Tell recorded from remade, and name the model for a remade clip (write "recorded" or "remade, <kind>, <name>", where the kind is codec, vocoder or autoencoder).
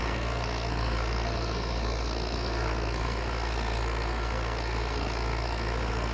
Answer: remade, codec, SNAC